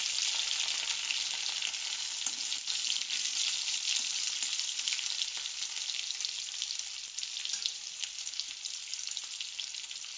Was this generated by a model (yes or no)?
no